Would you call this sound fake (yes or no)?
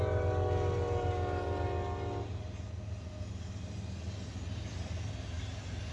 no